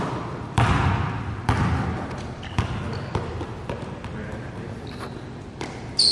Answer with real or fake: fake